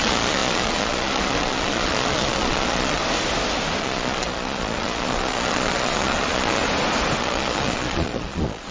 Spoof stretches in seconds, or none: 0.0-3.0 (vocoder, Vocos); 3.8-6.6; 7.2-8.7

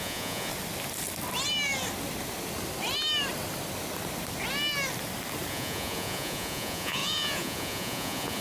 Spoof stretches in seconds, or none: 0.0-0.5 (vocoder, Vocos); 5.5-8.4

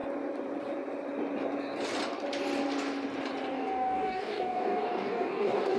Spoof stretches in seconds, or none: 3.5-5.8 (codec, DAC)

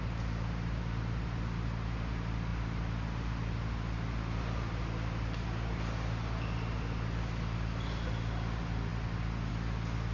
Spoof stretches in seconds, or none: none

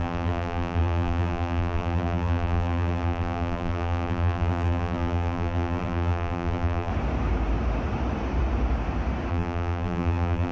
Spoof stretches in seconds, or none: 0.0-6.9 (vocoder, BigVGAN v2); 9.3-10.5